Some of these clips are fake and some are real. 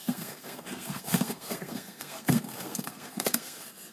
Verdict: fake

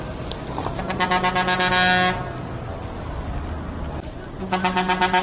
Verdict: real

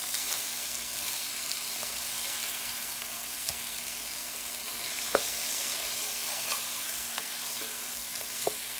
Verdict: fake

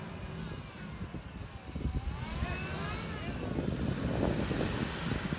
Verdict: real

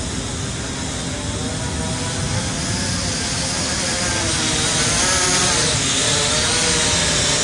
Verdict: real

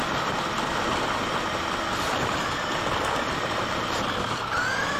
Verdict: real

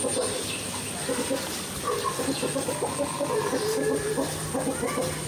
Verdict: real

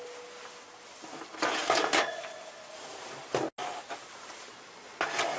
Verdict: real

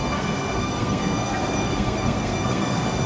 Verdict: fake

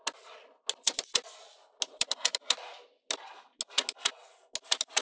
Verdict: real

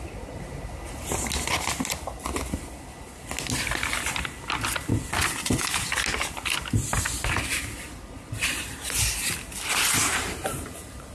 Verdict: real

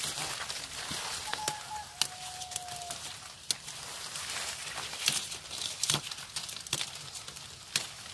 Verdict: real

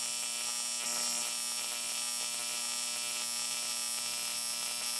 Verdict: real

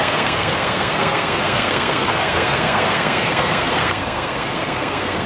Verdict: fake